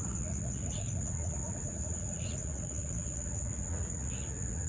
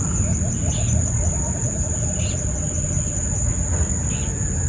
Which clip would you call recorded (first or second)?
second